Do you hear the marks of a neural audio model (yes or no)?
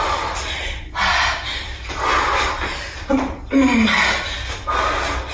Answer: no